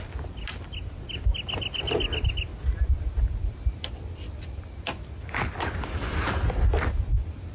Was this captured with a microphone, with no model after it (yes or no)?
yes